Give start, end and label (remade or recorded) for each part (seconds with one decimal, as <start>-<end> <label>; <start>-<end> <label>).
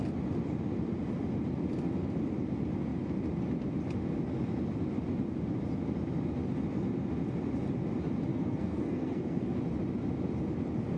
0.0-8.3 recorded; 8.3-9.5 remade; 9.5-11.0 recorded